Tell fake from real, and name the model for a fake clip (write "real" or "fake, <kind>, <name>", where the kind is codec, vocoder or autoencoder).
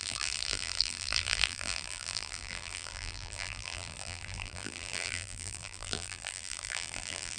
fake, vocoder, BigVGAN v2